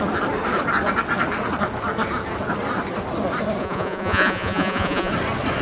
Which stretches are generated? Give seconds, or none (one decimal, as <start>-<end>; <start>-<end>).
3.6-5.1